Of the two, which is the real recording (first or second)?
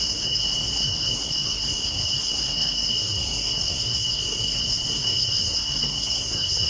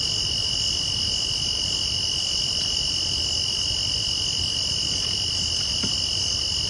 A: second